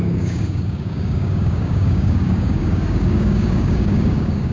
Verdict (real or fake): fake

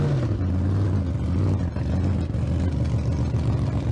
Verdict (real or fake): real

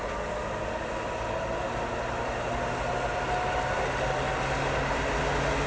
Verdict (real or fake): real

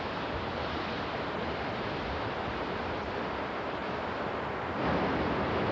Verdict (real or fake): real